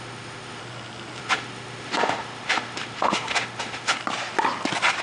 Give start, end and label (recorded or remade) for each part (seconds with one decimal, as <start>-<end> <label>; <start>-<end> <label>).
0.0-0.6 remade; 0.6-1.2 recorded; 1.2-4.0 remade; 4.0-5.0 recorded